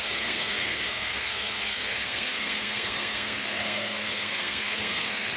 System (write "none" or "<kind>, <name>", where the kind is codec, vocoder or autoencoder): codec, SNAC